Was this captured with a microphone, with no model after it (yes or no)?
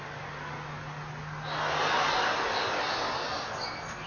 yes